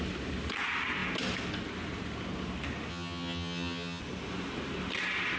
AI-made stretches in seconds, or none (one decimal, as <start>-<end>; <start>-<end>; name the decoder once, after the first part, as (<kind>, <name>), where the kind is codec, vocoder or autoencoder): 2.9-4.0 (vocoder, HiFi-GAN)